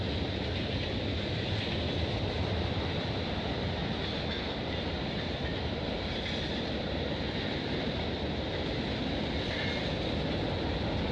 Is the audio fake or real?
real